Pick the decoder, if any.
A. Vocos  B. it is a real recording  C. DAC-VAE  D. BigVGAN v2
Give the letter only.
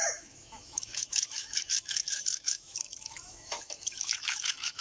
C